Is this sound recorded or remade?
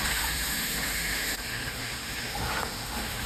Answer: remade